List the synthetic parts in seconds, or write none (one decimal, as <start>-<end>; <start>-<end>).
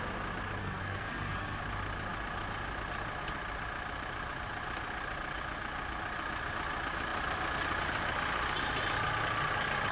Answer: 0.6-1.6